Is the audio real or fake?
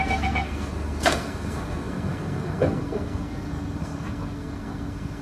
fake